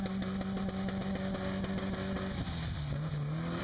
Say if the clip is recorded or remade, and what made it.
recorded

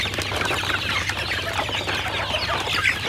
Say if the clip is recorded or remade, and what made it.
recorded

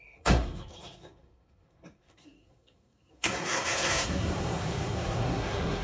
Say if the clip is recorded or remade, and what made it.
remade, codec, SNAC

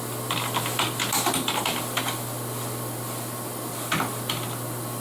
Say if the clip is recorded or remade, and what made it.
recorded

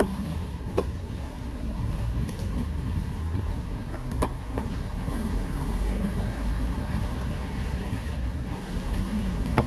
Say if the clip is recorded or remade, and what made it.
remade, codec, SNAC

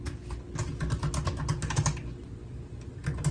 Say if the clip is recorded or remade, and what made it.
recorded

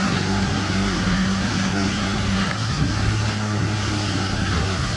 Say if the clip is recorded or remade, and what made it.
remade, codec, SNAC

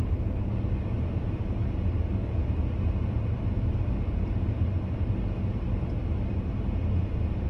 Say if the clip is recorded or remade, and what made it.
recorded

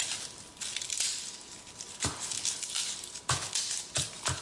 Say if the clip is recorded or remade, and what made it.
recorded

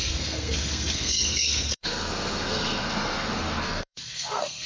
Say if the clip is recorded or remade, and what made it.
remade, codec, SNAC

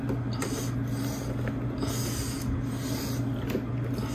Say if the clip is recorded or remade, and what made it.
recorded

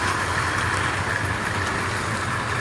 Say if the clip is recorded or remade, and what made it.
recorded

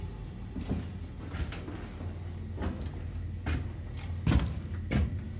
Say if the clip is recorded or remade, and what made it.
recorded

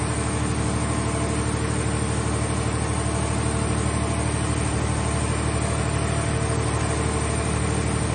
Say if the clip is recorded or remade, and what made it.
recorded